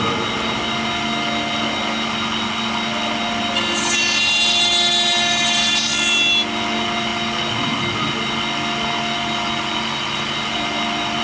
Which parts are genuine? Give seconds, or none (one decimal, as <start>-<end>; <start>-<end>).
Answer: 0.0-11.2